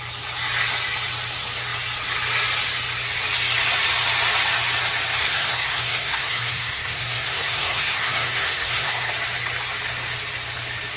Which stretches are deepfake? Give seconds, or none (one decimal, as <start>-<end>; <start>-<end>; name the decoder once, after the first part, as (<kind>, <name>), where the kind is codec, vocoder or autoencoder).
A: 5.2-9.1 (codec, SNAC)